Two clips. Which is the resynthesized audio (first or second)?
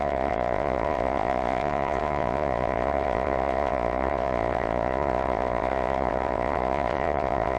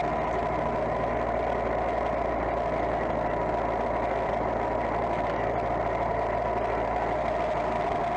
first